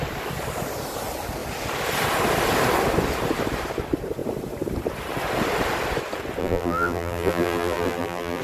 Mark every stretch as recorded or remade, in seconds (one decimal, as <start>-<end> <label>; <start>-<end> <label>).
0.0-6.4 recorded; 6.4-8.4 remade